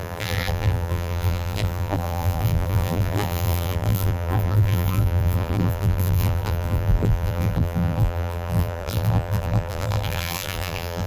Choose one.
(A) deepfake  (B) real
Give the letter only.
A